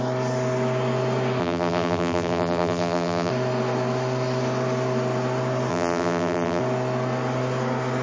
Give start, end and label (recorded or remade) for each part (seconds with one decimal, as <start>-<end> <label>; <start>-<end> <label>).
0.0-1.4 recorded; 1.4-3.3 remade; 3.3-5.7 recorded; 5.7-6.6 remade; 6.6-8.0 recorded